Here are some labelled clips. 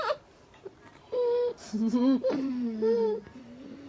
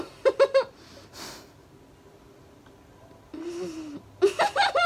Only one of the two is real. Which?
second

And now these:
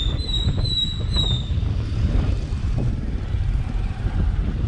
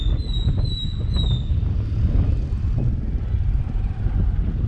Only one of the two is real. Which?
second